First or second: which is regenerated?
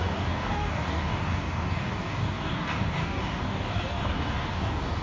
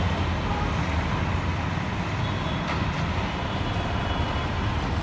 first